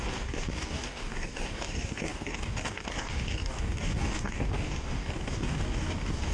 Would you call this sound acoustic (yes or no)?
no